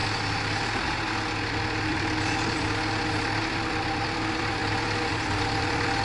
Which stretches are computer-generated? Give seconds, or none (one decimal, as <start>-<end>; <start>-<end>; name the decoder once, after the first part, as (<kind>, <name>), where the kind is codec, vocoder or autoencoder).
1.9-4.6 (vocoder, BigVGAN v2); 5.1-6.0